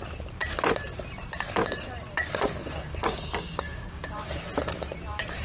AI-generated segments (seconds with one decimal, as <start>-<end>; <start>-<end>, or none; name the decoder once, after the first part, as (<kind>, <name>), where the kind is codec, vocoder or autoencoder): 2.6-4.4 (codec, DAC)